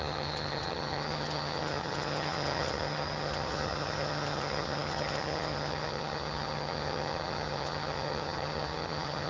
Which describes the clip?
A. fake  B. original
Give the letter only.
A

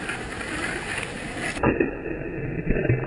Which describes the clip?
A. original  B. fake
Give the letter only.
A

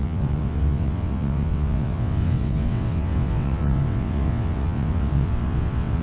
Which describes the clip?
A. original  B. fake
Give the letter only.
B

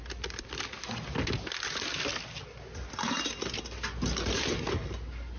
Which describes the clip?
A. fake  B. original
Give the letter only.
B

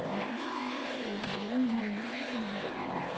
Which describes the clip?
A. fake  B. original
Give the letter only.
A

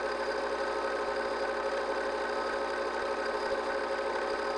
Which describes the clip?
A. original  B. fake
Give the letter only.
A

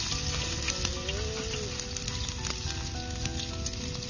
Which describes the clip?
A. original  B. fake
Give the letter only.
A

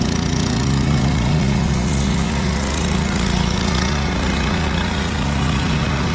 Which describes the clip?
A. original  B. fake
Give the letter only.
B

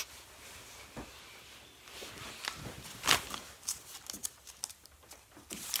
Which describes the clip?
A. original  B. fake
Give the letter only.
A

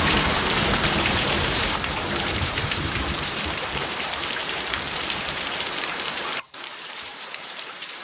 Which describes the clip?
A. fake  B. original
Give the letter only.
A